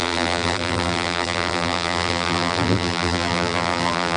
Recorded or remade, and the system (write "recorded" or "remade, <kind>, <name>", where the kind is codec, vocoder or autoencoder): remade, vocoder, BigVGAN v2